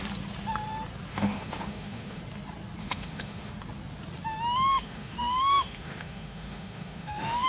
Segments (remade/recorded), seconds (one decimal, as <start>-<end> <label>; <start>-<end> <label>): 0.0-1.1 recorded; 1.1-2.2 remade; 2.2-2.8 recorded; 2.8-3.5 remade; 3.5-4.7 recorded; 4.7-7.5 remade